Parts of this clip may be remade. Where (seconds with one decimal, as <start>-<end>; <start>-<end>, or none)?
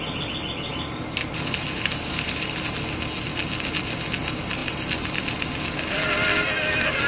0.7-2.8; 4.6-6.1